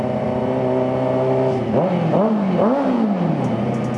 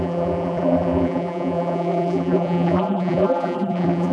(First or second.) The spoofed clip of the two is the second